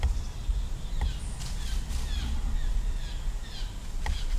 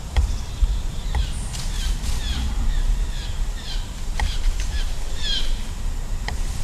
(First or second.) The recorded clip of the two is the first